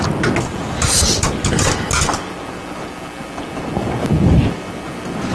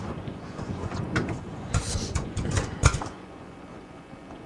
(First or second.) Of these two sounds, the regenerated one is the second